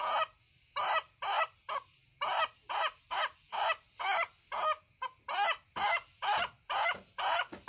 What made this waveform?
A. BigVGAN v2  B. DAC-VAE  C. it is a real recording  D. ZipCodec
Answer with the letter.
C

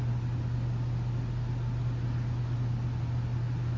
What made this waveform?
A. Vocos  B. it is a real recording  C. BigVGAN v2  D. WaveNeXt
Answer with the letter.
B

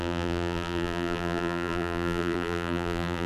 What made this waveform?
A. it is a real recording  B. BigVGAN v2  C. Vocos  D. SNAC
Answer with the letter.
B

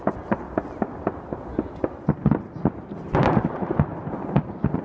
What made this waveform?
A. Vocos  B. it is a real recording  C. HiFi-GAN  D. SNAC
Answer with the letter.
B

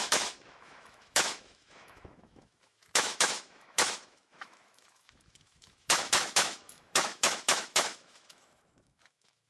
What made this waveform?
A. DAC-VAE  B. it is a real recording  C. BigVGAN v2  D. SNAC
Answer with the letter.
A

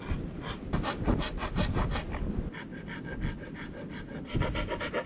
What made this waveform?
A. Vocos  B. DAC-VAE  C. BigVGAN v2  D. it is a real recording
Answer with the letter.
D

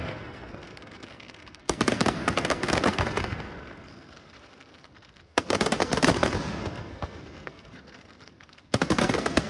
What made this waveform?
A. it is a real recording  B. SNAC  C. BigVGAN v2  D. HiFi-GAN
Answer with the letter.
B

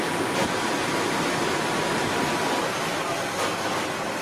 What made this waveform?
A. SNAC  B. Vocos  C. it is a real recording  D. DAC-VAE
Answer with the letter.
C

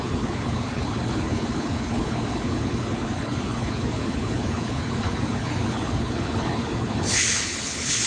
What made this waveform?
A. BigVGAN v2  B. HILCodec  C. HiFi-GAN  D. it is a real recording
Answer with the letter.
B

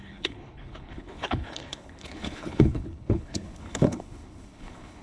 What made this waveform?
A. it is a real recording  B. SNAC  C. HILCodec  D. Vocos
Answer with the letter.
C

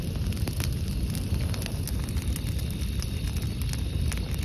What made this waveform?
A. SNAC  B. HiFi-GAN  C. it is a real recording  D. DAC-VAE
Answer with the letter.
C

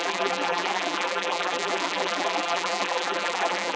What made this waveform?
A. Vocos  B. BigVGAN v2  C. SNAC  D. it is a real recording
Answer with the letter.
B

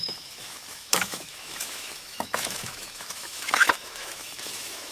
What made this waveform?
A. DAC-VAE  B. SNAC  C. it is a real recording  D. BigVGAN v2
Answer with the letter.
A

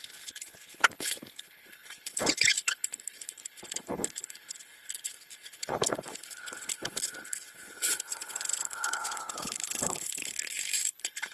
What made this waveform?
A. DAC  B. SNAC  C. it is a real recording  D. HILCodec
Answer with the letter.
D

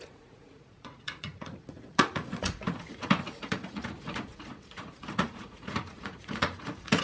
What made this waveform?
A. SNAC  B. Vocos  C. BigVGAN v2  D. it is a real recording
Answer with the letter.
B